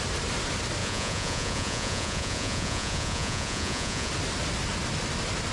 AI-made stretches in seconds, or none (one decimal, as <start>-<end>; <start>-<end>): 0.8-4.1